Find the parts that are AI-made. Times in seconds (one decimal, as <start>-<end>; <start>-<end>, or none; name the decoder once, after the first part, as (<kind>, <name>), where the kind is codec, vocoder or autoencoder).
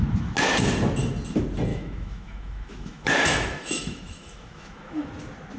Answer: 1.7-5.1 (autoencoder, DAC-VAE)